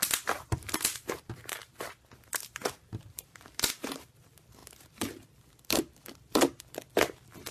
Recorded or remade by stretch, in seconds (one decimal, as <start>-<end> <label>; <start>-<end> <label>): 0.0-7.5 recorded

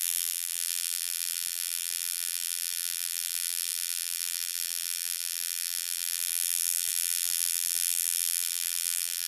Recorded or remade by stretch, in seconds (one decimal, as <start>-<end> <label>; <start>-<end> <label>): 0.0-9.3 remade

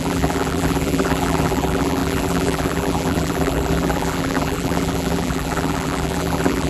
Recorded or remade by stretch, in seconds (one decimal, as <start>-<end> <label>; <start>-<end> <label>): 0.0-6.7 remade

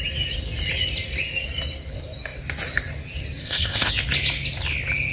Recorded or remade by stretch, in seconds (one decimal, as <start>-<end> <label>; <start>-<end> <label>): 0.0-3.4 recorded; 3.4-3.9 remade; 3.9-5.1 recorded

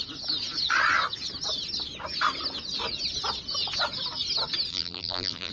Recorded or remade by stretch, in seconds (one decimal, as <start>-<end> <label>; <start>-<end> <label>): 0.0-4.7 recorded; 4.7-5.5 remade